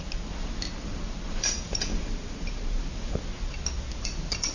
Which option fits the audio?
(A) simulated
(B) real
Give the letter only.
B